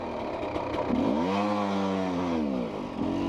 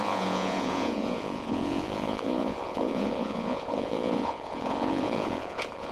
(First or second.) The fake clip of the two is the second